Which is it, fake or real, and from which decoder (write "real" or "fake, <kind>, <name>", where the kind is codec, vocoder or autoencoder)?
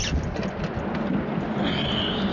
real